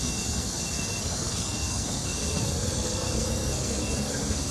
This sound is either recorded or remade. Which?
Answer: remade